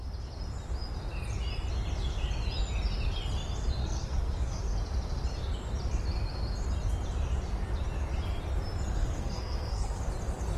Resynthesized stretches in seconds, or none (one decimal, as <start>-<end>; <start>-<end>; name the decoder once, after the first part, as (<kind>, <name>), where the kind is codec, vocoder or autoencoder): 3.8-4.7 (codec, SNAC); 9.0-10.0